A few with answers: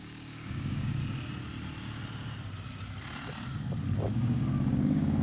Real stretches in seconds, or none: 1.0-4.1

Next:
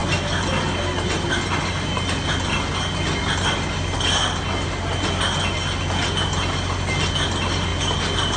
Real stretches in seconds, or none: 0.0-8.4

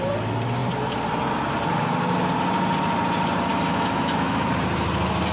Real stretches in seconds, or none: 0.0-3.5; 4.5-5.3